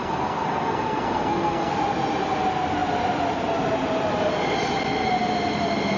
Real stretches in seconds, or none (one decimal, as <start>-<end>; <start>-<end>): 1.7-6.0

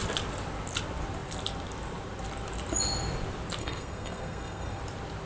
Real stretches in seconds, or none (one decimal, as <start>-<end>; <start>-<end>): 0.0-3.6; 4.8-5.3